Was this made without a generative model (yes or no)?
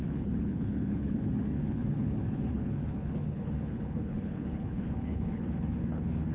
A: no